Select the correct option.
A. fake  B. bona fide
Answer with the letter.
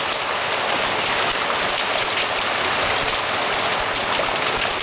B